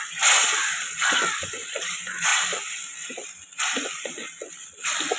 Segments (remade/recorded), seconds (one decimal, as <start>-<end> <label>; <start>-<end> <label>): 0.0-5.2 recorded